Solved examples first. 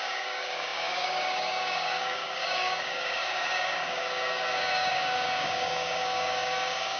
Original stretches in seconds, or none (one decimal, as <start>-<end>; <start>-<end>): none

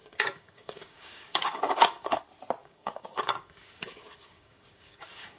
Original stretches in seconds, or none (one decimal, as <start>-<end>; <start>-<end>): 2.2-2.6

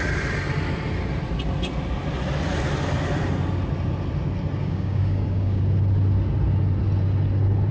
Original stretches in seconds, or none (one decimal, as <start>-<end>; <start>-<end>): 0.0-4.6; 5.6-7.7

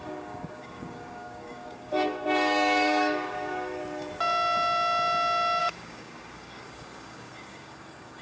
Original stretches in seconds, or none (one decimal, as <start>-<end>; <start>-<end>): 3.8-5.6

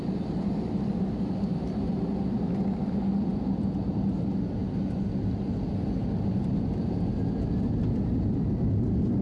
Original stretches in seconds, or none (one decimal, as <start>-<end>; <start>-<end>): 0.0-9.2